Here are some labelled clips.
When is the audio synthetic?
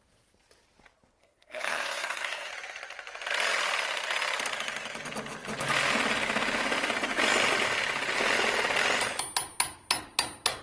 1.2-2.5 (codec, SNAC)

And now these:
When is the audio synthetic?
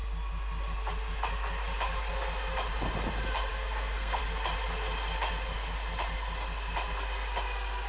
3.5-4.2 (codec, SNAC)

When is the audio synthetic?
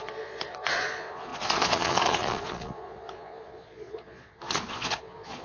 0.0-5.4 (vocoder, Vocos)